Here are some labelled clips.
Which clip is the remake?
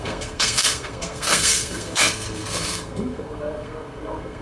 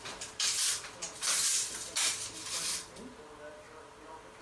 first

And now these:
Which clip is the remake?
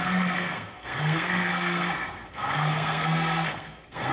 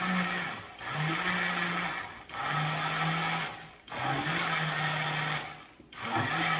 first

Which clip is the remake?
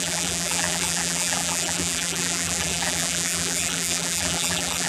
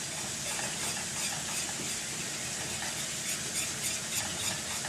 first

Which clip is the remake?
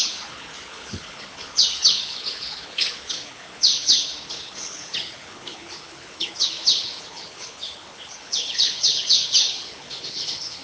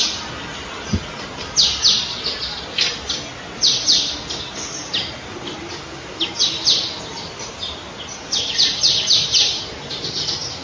first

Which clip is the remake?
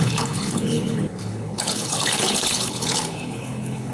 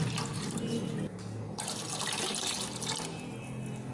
first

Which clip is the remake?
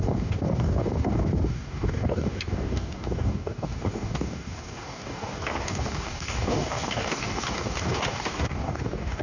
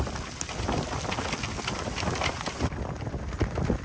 first